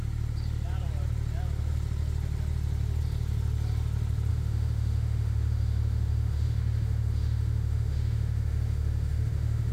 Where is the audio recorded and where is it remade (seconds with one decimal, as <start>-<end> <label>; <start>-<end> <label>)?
0.0-4.3 recorded; 4.3-9.7 remade

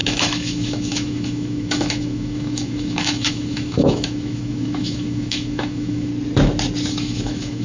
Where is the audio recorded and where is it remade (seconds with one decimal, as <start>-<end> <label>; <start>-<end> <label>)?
0.0-6.1 remade; 6.1-6.9 recorded; 6.9-7.6 remade

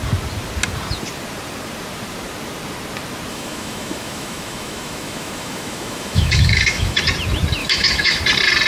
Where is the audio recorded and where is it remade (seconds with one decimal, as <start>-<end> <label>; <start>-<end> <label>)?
0.0-3.3 recorded; 3.3-7.0 remade; 7.0-7.6 recorded; 7.6-8.2 remade; 8.2-8.7 recorded

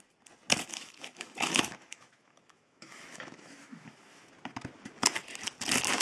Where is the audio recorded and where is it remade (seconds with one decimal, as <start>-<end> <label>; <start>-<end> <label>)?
0.0-0.7 recorded; 0.7-4.3 remade; 4.3-6.0 recorded

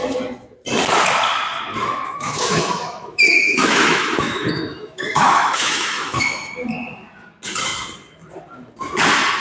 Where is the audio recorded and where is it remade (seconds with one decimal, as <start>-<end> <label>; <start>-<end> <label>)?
0.0-1.8 recorded; 1.8-6.5 remade; 6.5-9.4 recorded

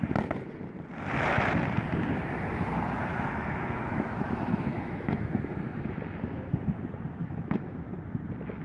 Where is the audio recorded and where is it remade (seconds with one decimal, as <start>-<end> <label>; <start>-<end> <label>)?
0.0-3.1 recorded; 3.1-5.9 remade; 5.9-7.2 recorded; 7.2-7.9 remade; 7.9-8.6 recorded